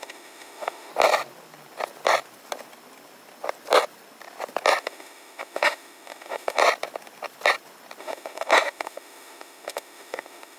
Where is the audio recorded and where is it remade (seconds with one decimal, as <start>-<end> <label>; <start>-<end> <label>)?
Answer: 0.0-0.9 remade; 0.9-4.8 recorded; 4.8-6.6 remade; 6.6-8.0 recorded; 8.0-10.6 remade